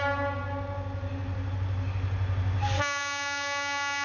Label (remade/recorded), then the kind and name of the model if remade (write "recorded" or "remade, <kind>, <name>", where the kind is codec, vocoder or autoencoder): recorded